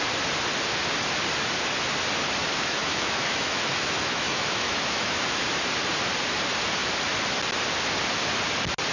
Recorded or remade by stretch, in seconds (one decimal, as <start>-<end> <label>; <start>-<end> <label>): 0.0-2.4 recorded; 2.4-5.4 remade; 5.4-8.9 recorded